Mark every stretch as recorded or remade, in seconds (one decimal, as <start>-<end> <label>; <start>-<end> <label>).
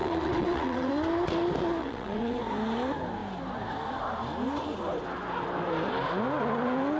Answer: 0.0-0.9 remade; 0.9-1.8 recorded; 1.8-2.4 remade; 2.4-7.0 recorded